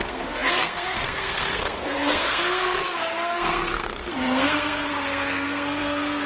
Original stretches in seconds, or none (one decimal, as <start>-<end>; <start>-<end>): none